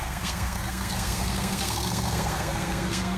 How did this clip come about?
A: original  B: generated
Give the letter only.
B